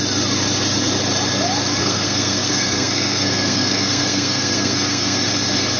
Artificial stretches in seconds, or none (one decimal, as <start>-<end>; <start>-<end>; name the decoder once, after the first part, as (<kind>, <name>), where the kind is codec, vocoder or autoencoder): 1.8-5.3 (codec, SNAC)